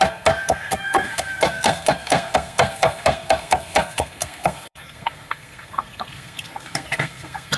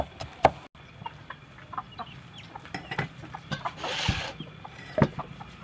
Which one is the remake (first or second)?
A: first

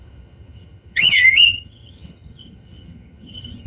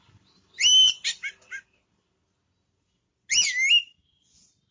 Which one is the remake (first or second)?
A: first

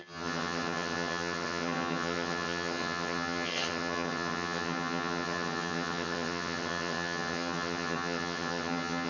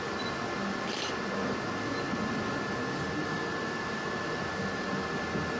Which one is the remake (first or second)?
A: first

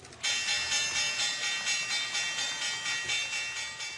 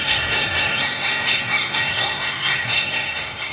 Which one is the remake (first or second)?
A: second